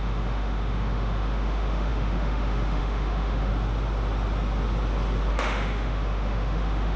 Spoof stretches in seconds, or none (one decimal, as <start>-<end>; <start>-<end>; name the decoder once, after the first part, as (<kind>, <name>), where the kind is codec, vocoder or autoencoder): 0.0-3.5 (autoencoder, DAC-VAE); 5.3-7.0